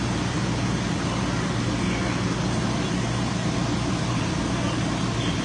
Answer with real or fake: real